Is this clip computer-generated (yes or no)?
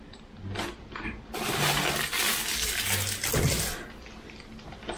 no